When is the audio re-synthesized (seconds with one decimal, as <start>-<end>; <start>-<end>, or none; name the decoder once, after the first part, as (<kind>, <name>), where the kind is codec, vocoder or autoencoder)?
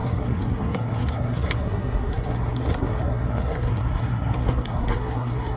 0.0-5.6 (codec, SNAC)